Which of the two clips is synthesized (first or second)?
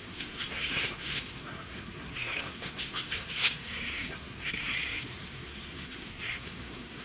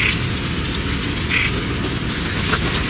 first